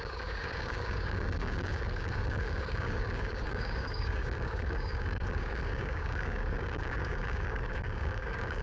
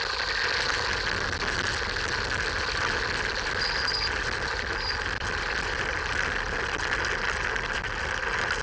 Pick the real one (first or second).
second